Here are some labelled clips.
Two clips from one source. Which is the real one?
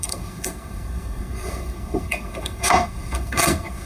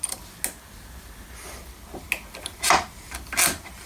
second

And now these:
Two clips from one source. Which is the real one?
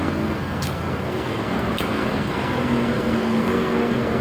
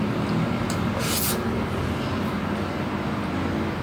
second